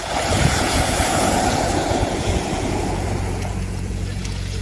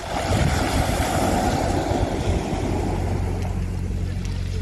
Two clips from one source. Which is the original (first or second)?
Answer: second